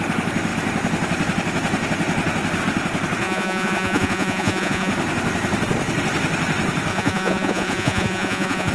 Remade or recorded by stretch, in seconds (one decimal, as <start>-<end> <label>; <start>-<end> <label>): 0.0-3.2 recorded; 3.2-4.9 remade; 4.9-6.9 recorded; 6.9-8.7 remade